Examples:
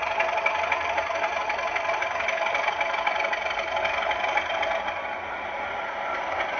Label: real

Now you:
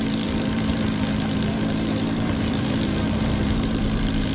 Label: fake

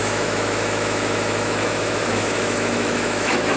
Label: fake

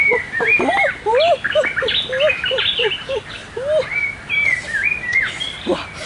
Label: real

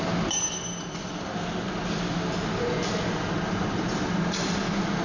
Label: real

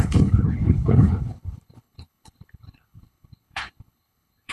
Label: fake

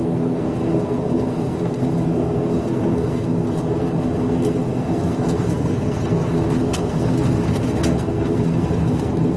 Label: fake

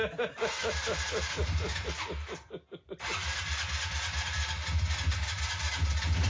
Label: real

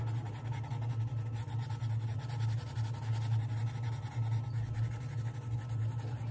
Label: real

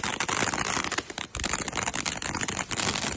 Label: fake